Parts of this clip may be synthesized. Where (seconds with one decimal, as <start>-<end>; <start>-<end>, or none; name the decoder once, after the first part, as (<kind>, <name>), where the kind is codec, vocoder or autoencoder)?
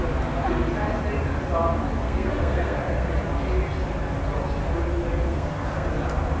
2.0-3.1 (codec, SNAC); 5.3-5.9